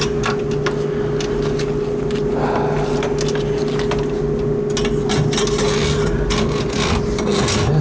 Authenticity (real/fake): real